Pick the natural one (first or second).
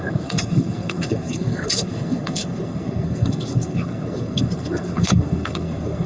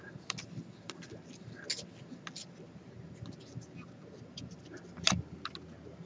second